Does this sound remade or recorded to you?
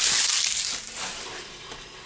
recorded